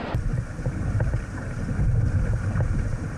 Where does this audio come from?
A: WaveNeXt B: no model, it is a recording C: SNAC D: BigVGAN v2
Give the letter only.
D